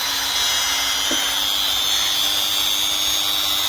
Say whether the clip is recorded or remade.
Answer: recorded